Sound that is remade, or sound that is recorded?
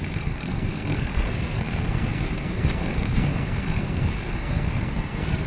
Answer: remade